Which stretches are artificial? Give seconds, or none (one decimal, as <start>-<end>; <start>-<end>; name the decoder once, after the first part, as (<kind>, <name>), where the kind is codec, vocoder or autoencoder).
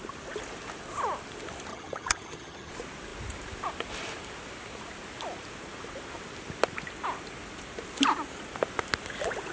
1.7-2.7 (vocoder, HiFi-GAN)